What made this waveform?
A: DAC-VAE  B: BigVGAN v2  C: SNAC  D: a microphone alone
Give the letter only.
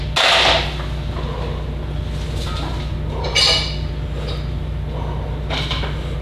D